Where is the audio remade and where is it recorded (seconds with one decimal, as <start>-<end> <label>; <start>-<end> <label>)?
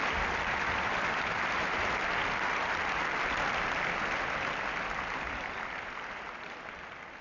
0.0-7.2 recorded